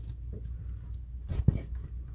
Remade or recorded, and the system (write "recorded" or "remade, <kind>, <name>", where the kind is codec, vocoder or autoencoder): recorded